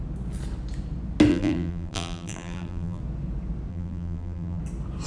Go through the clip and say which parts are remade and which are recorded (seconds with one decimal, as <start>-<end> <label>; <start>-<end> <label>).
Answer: 0.0-1.3 recorded; 1.3-3.0 remade; 3.0-3.7 recorded; 3.7-4.6 remade; 4.6-5.1 recorded